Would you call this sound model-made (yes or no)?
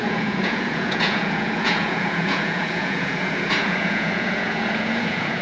yes